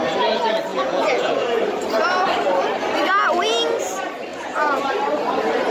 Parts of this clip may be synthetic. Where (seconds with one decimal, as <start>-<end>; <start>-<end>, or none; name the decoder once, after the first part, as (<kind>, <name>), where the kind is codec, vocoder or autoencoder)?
0.7-1.6 (vocoder, Vocos); 4.3-4.8